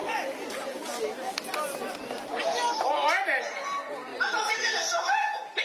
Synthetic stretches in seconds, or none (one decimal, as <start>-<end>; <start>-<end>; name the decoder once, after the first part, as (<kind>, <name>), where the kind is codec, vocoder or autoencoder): 3.4-4.1 (vocoder, Vocos)